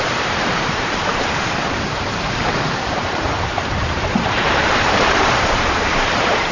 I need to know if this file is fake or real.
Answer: fake